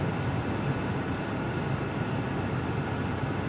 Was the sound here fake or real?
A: real